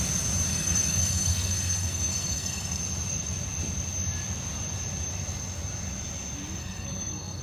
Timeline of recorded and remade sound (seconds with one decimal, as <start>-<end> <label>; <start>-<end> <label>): 0.0-0.5 recorded; 0.5-2.8 remade; 2.8-6.6 recorded; 6.6-7.4 remade